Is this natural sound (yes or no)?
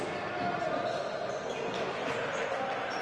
yes